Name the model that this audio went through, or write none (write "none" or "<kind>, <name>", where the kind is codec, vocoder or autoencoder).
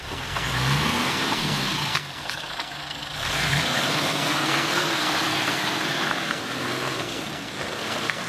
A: codec, SNAC